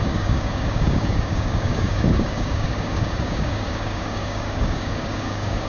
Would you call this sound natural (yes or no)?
no